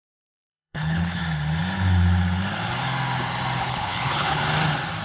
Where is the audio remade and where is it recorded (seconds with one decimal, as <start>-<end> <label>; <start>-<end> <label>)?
0.0-1.2 remade; 1.2-3.6 recorded; 3.6-4.4 remade; 4.4-5.0 recorded